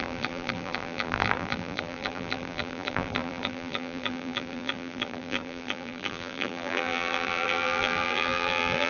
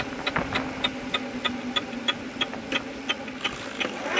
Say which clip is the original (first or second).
second